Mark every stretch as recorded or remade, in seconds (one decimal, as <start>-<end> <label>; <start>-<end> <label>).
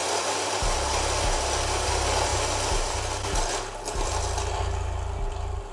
0.0-0.6 remade; 0.6-5.7 recorded